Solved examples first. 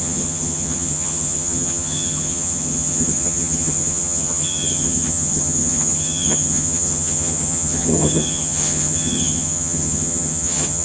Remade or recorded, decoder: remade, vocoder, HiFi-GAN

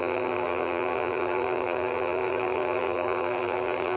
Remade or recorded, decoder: remade, vocoder, BigVGAN v2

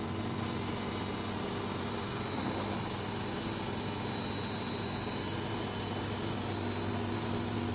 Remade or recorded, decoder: recorded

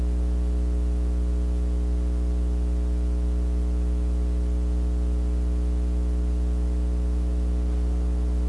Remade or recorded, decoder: recorded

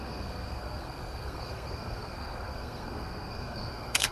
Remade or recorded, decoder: remade, codec, SNAC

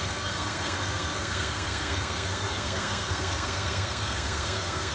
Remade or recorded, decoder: remade, codec, SNAC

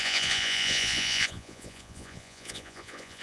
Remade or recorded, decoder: remade, vocoder, Vocos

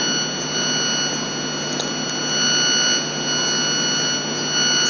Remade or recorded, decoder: recorded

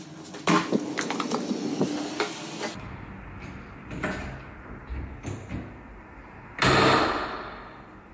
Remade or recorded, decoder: recorded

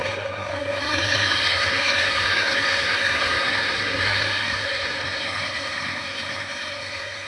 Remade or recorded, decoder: remade, codec, SNAC